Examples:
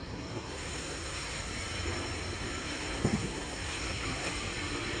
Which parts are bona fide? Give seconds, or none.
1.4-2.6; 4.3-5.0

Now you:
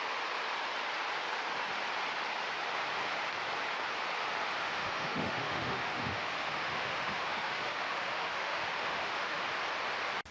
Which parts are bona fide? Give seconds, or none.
0.0-4.6; 9.4-10.3